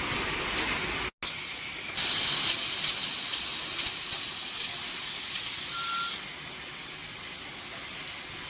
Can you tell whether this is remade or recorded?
recorded